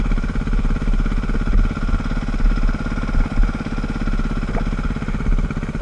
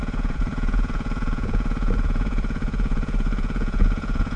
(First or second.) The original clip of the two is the first